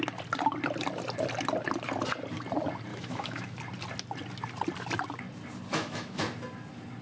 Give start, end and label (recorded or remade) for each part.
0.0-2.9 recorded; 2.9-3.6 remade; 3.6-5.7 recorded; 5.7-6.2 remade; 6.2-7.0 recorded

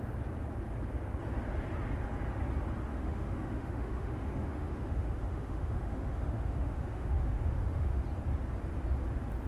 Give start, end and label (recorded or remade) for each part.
0.0-2.9 recorded; 2.9-8.0 remade; 8.0-9.5 recorded

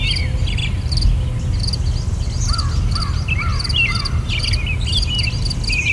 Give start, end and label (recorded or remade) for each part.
0.0-5.9 recorded